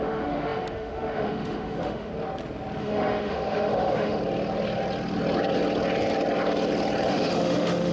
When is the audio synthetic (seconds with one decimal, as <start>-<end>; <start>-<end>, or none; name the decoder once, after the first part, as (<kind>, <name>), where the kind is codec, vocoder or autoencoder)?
0.0-2.1 (autoencoder, DAC-VAE); 2.8-4.2; 7.1-7.9